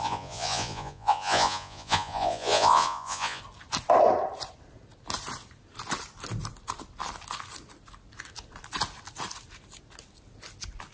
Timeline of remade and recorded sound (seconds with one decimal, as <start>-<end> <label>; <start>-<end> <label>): 0.0-3.4 remade; 3.4-10.9 recorded